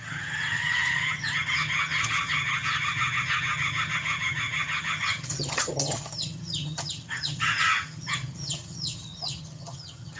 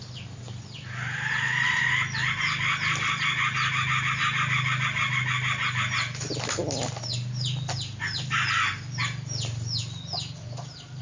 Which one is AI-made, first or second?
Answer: first